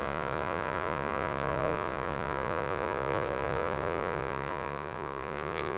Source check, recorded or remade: remade